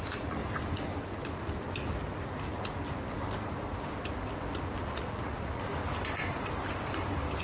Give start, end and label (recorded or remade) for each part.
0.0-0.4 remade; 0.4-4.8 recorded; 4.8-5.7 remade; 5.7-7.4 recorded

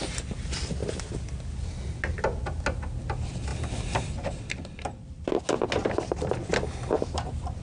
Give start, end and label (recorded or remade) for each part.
0.0-0.8 recorded; 0.8-2.4 remade; 2.4-3.5 recorded; 3.5-5.3 remade; 5.3-5.8 recorded; 5.8-6.5 remade; 6.5-7.6 recorded

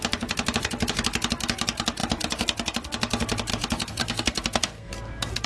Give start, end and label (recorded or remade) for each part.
0.0-4.0 recorded; 4.0-4.9 remade; 4.9-5.5 recorded

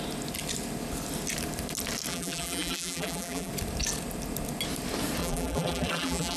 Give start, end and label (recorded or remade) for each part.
0.0-2.1 recorded; 2.1-3.5 remade; 3.5-5.2 recorded; 5.2-6.4 remade